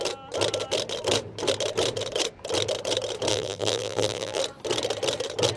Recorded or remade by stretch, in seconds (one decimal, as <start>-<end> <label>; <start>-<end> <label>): 0.0-3.3 recorded; 3.3-4.4 remade; 4.4-5.6 recorded